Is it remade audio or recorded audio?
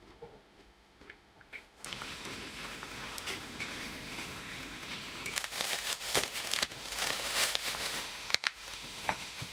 remade